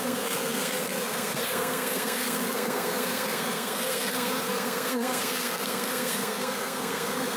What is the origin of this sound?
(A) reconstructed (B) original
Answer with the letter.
A